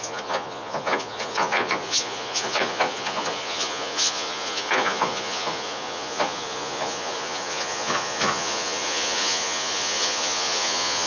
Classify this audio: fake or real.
fake